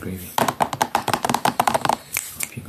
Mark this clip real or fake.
fake